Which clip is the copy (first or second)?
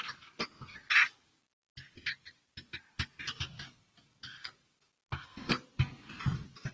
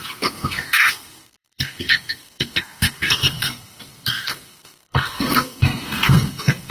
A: second